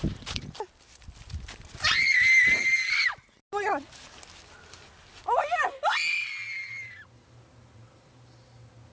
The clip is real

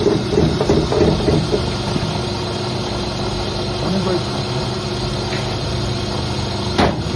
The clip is real